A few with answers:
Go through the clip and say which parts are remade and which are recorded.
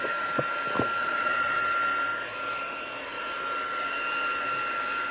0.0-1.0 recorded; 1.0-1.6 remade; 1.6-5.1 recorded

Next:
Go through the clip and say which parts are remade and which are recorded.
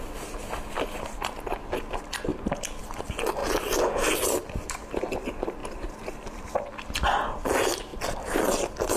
0.0-2.3 recorded; 2.3-2.8 remade; 2.8-3.4 recorded; 3.4-4.7 remade; 4.7-5.6 recorded; 5.6-6.4 remade; 6.4-7.9 recorded; 7.9-9.0 remade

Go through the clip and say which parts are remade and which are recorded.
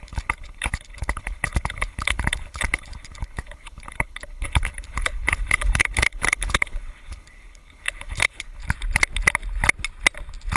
0.0-8.6 remade; 8.6-10.6 recorded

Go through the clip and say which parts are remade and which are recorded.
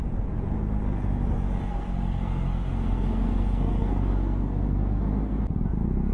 0.0-1.7 recorded; 1.7-5.4 remade; 5.4-6.1 recorded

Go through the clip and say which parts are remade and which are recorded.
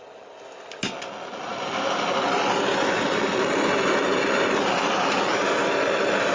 0.0-1.5 recorded; 1.5-5.3 remade; 5.3-6.3 recorded